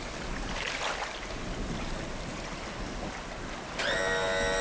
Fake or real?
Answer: real